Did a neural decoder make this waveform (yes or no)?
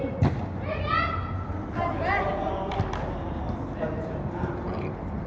no